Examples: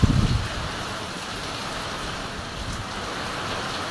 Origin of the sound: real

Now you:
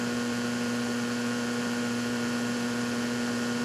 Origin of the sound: fake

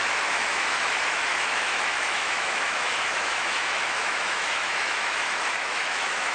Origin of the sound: fake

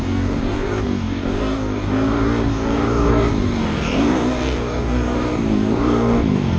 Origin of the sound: fake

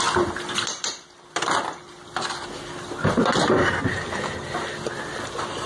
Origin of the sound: real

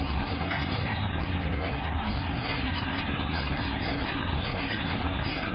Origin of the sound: fake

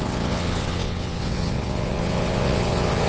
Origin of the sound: fake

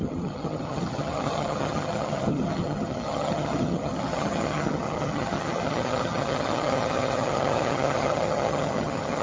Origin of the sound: fake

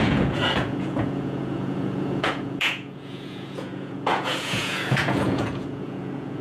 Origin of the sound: fake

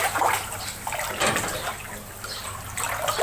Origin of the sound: real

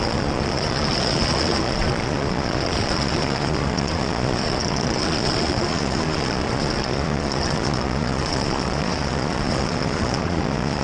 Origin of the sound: fake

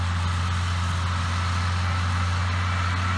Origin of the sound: real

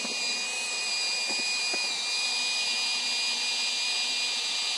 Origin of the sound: real